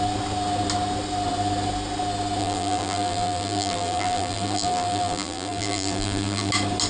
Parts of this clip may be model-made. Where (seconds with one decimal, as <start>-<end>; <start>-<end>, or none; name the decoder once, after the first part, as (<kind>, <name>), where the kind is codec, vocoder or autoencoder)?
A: 2.4-6.5 (vocoder, BigVGAN v2)